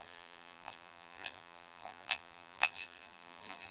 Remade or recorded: remade